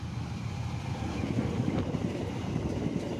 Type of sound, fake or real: real